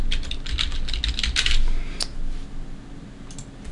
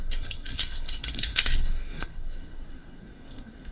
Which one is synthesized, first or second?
second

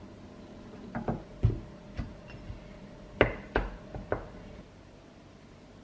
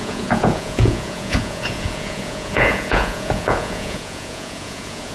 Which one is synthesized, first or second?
second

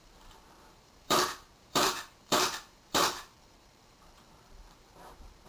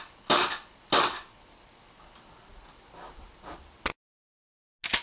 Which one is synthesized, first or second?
first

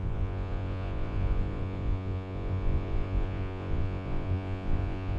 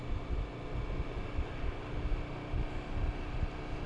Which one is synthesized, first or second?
first